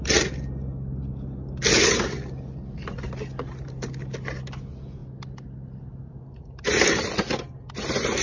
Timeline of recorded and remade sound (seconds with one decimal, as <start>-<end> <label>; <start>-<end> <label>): 0.0-8.2 recorded